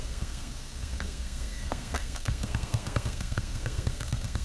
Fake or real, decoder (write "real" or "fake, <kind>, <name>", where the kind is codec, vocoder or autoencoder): fake, codec, SNAC